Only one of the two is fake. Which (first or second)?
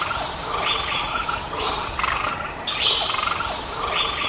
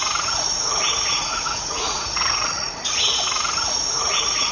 second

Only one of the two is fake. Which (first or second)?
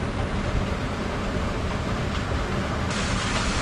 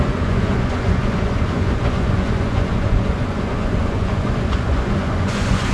second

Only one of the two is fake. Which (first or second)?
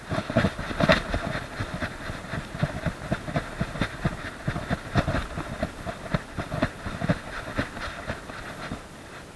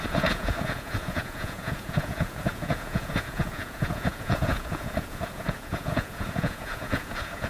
second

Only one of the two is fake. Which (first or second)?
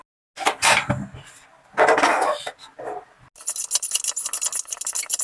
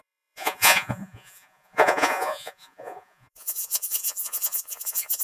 second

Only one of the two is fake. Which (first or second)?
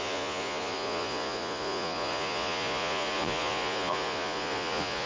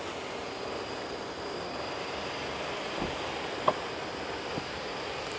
first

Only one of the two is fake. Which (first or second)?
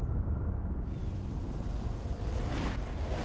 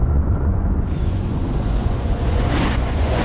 second